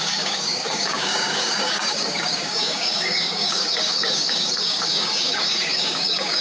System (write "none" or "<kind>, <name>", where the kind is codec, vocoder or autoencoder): codec, DAC